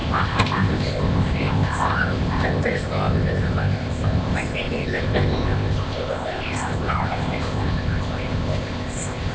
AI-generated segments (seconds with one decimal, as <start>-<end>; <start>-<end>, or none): 0.0-9.3